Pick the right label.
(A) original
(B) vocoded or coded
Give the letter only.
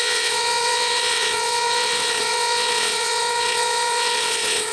B